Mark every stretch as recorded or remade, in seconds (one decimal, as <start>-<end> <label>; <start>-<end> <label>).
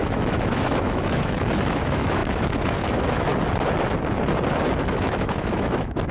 0.0-3.3 remade; 3.3-4.9 recorded; 4.9-6.1 remade